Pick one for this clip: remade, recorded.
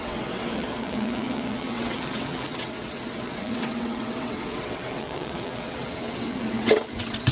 remade